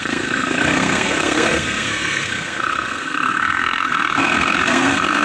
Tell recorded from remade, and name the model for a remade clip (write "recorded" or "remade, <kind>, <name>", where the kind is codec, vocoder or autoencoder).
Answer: remade, codec, SNAC